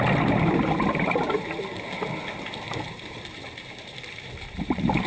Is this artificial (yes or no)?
yes